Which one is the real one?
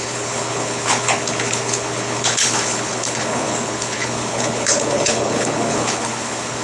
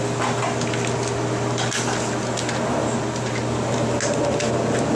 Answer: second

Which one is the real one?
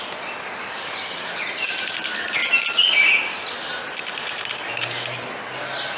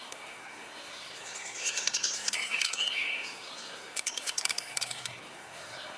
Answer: first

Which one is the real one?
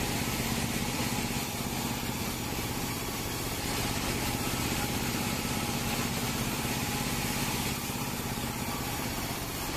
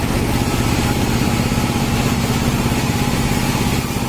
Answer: second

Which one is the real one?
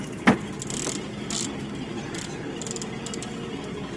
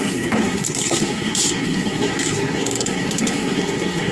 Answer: first